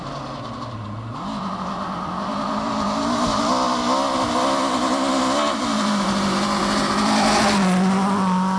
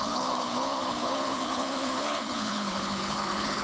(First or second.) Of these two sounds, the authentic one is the first